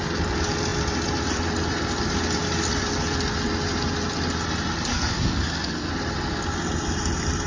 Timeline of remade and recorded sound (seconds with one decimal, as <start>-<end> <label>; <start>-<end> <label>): 0.0-4.9 recorded; 4.9-5.9 remade; 5.9-7.5 recorded

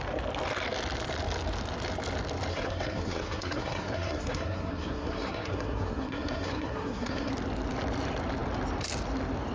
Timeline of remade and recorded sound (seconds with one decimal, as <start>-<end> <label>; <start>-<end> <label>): 0.0-2.5 recorded; 2.5-7.3 remade; 7.3-9.5 recorded

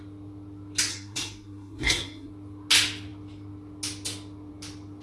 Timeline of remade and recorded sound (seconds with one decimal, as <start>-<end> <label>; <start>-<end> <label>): 0.0-0.9 recorded; 0.9-2.3 remade; 2.3-5.0 recorded

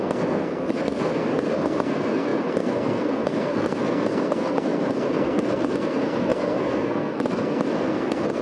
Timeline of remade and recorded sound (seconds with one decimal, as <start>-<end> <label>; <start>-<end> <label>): 0.0-8.4 remade

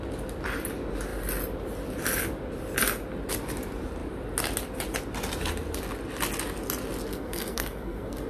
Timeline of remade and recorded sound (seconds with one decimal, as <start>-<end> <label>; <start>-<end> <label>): 0.0-7.1 recorded; 7.1-8.3 remade

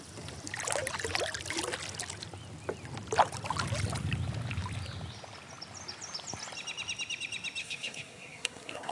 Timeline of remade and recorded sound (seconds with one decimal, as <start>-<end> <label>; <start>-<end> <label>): 0.0-7.6 recorded; 7.6-8.9 remade

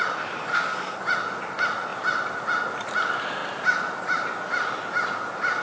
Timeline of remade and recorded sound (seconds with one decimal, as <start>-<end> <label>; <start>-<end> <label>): 0.0-0.5 recorded; 0.5-1.0 remade; 1.0-5.6 recorded

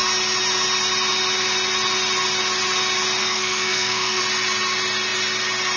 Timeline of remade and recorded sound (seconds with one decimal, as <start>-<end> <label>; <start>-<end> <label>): 0.0-3.2 recorded; 3.2-4.2 remade; 4.2-5.8 recorded